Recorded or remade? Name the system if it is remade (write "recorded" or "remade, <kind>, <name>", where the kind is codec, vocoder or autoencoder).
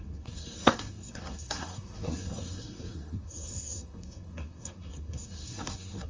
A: remade, codec, SNAC